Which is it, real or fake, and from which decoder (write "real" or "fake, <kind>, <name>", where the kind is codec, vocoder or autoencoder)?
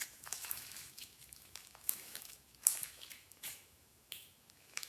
fake, autoencoder, DAC-VAE